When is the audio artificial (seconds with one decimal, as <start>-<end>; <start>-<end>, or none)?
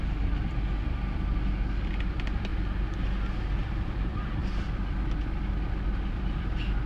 0.0-2.5; 3.6-4.4; 5.7-6.9